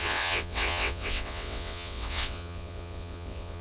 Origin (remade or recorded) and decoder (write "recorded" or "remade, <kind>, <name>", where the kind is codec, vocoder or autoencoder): remade, vocoder, WaveNeXt